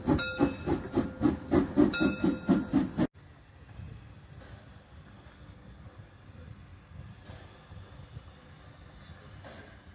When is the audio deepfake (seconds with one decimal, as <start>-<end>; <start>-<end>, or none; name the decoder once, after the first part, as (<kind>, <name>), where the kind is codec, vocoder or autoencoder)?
none